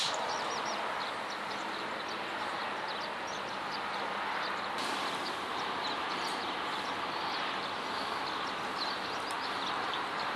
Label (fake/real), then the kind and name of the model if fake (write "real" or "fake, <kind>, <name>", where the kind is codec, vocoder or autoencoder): real